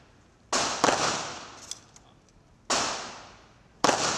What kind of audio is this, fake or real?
real